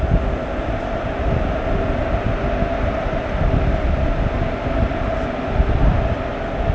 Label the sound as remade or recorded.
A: recorded